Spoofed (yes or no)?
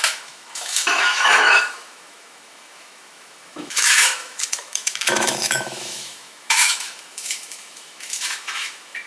yes